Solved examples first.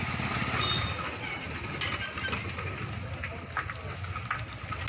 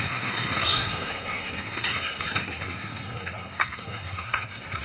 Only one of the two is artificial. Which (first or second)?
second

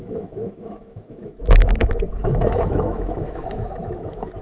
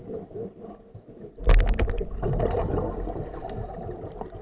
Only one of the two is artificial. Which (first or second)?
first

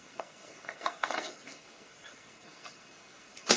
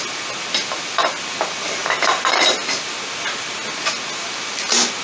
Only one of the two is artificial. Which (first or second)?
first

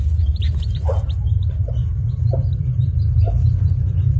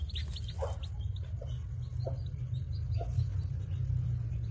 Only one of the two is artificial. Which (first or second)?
first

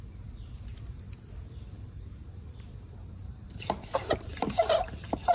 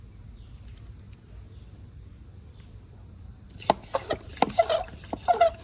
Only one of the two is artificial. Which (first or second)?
first